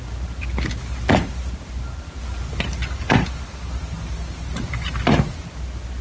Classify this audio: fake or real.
real